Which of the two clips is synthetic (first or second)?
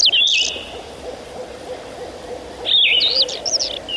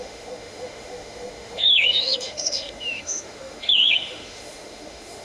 second